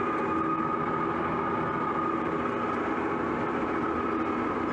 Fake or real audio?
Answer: real